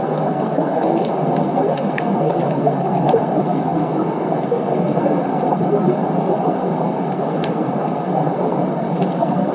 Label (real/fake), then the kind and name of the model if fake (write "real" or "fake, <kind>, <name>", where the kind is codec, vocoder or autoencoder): fake, codec, SNAC